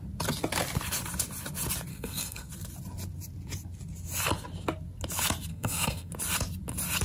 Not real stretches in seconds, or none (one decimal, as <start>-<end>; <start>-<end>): 1.9-2.5; 5.5-6.1

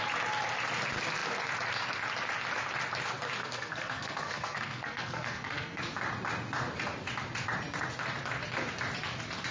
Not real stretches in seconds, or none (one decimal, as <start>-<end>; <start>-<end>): 3.4-5.8